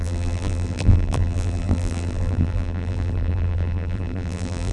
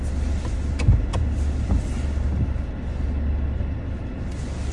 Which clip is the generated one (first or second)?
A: first